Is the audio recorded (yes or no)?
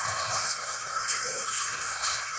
no